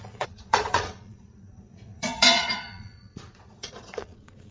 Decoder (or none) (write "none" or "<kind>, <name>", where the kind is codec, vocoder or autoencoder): vocoder, Vocos